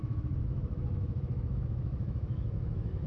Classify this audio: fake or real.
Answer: fake